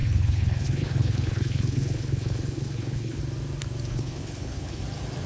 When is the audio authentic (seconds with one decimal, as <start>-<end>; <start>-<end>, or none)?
3.2-3.9; 4.8-5.3